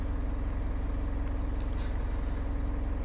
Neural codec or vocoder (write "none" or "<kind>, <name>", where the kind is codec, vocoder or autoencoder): none